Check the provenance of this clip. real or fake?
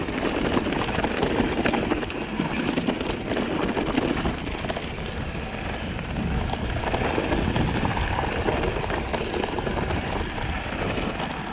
real